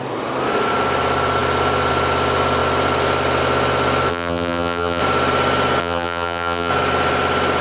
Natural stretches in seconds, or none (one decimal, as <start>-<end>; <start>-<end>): 0.0-4.1; 5.0-5.8; 6.7-7.6